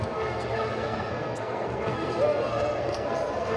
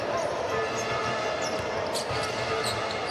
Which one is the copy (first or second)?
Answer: first